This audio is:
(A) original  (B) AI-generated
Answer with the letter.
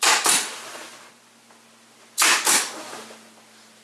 A